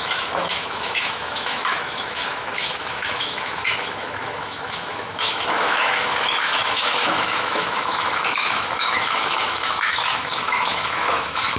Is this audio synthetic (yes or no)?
yes